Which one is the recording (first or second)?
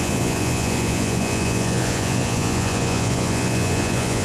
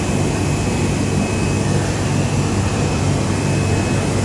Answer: second